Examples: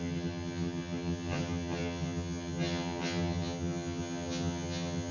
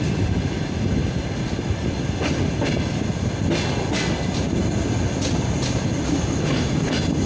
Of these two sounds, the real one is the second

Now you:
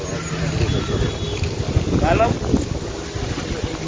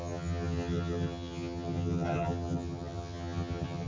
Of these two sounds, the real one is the first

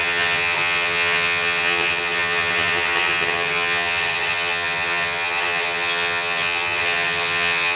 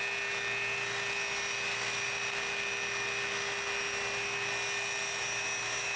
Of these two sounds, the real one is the second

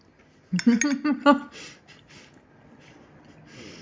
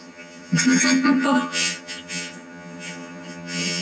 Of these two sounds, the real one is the first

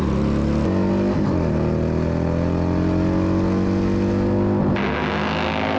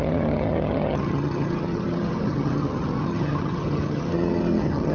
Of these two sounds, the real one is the first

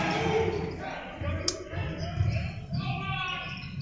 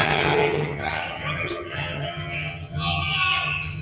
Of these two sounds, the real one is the first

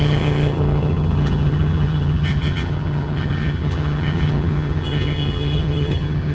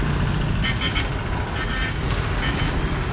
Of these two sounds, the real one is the second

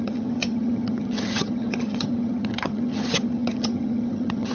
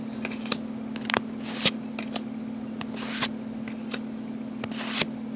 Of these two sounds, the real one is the second